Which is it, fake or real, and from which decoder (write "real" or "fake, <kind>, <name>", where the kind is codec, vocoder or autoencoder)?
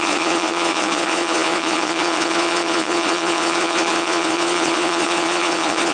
fake, vocoder, Vocos